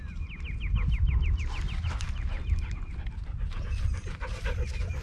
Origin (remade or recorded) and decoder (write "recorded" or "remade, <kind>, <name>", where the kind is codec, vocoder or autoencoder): recorded